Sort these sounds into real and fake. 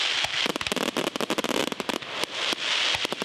real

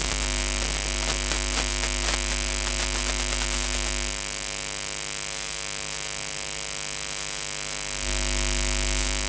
real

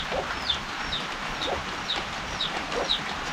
real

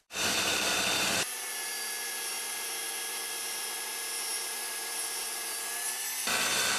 fake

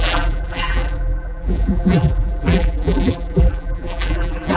fake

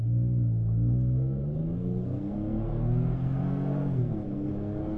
fake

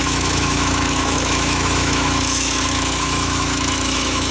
fake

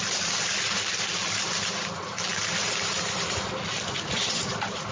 real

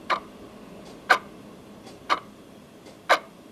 real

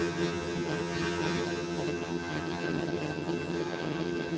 fake